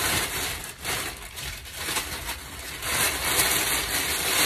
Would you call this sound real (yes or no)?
yes